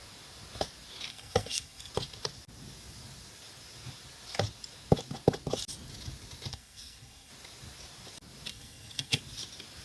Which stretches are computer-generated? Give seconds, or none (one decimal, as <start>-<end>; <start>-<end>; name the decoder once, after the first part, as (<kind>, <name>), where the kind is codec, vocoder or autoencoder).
1.1-1.9 (codec, SNAC); 6.5-7.3; 8.5-9.2

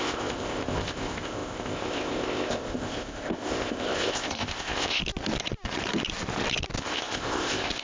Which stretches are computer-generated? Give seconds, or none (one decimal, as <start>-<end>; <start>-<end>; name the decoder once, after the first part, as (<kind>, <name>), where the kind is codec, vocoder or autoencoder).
0.0-5.0 (codec, ZipCodec); 6.8-7.8